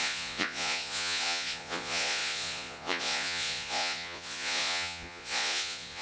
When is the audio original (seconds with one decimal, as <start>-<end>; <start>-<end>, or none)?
none